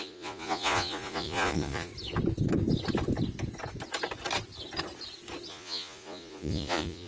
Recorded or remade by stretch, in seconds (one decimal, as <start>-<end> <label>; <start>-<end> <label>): 0.0-1.9 remade; 1.9-5.5 recorded; 5.5-7.1 remade